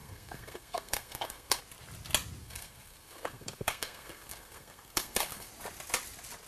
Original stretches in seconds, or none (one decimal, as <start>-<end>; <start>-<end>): 1.6-2.4; 5.5-6.5